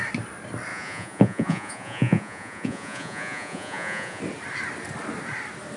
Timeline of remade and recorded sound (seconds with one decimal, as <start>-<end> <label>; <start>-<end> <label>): 0.0-0.7 recorded; 0.7-4.2 remade; 4.2-5.8 recorded